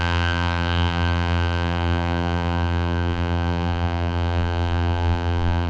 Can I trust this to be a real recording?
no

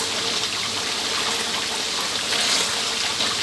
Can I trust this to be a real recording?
yes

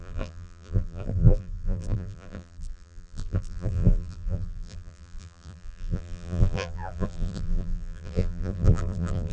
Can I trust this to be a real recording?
no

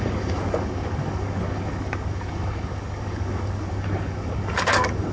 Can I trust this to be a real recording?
no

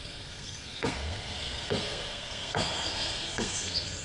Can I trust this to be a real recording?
no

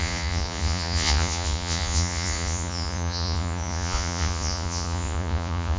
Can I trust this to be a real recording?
no